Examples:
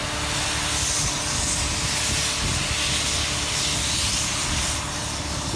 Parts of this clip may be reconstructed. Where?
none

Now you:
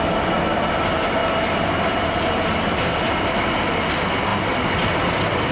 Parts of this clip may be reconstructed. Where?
none